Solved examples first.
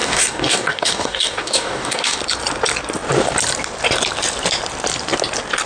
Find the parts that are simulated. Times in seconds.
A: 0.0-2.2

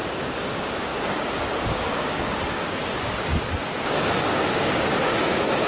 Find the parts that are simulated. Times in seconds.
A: 0.0-5.7

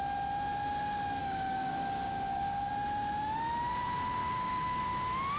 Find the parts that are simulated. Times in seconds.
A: 1.2-2.7; 4.2-4.8

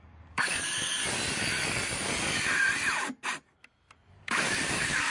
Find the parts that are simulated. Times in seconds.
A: 0.0-1.0; 4.1-5.1

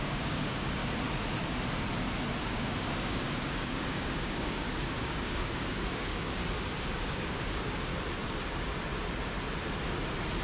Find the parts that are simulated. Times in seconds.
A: 0.0-0.8; 2.4-6.4; 7.0-7.9